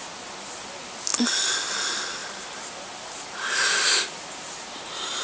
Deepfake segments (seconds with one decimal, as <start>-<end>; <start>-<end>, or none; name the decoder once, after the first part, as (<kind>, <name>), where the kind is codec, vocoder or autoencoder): none